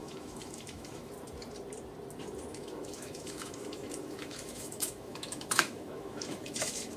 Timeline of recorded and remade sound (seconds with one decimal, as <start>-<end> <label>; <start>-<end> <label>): 0.0-1.1 remade; 1.1-2.5 recorded; 2.5-7.0 remade